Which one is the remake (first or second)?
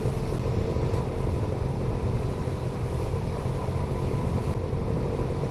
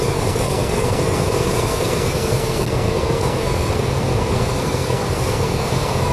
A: second